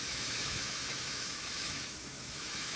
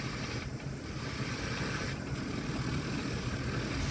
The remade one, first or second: first